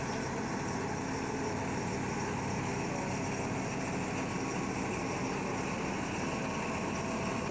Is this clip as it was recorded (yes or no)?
yes